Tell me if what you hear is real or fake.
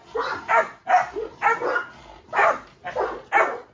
real